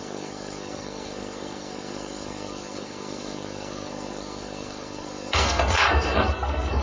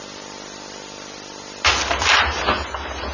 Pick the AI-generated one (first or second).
first